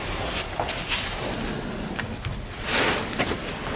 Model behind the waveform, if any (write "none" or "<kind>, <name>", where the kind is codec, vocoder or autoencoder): none